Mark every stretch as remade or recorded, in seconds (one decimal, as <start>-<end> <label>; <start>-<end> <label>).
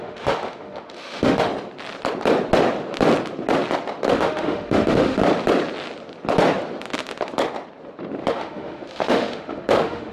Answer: 0.0-1.5 remade; 1.5-4.1 recorded; 4.1-5.2 remade; 5.2-8.3 recorded; 8.3-10.1 remade